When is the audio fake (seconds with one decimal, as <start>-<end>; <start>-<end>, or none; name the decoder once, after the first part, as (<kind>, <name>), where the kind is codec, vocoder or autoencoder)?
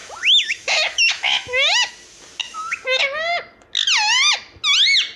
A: 0.0-1.9 (autoencoder, DAC-VAE); 2.4-3.0